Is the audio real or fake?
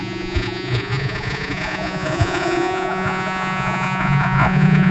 fake